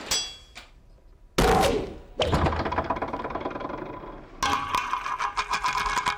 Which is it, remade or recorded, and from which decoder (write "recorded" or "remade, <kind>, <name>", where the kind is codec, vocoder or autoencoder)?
recorded